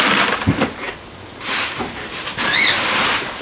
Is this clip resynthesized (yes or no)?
yes